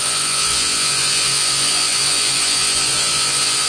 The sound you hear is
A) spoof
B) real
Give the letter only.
A